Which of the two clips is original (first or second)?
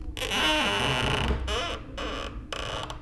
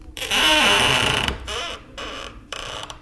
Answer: first